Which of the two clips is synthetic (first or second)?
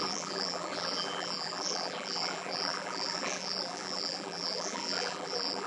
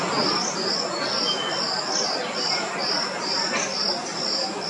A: first